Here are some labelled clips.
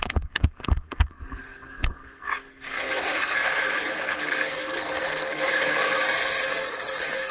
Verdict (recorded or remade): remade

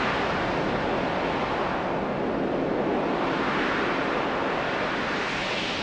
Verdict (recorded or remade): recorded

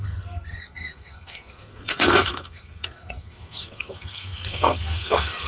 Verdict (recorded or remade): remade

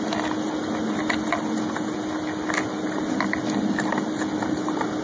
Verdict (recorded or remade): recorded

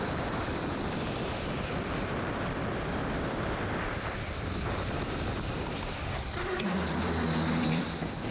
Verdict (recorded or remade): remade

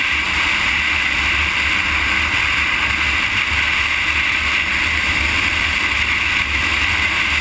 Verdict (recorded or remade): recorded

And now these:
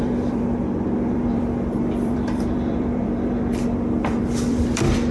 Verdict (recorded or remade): remade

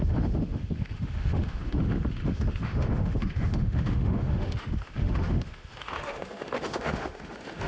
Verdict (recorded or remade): remade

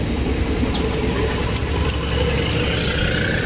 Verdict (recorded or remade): recorded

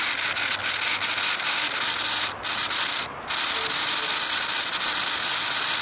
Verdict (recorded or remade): recorded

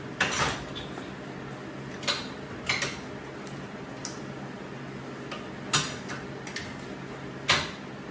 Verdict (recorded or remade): recorded